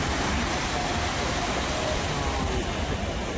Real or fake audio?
real